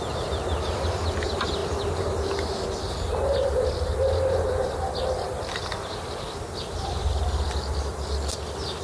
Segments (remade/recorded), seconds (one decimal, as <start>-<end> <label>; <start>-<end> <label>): 0.0-8.8 recorded